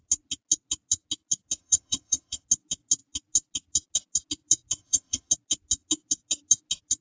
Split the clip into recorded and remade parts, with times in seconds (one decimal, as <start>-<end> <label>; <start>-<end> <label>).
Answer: 0.0-1.6 recorded; 1.6-2.4 remade; 2.4-4.8 recorded; 4.8-5.3 remade; 5.3-7.0 recorded